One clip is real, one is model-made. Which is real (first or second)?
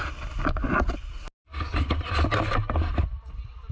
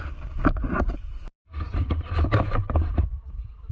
first